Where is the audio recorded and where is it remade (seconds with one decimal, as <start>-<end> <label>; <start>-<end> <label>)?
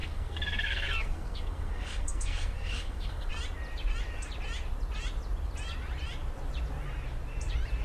0.0-3.3 remade; 3.3-7.8 recorded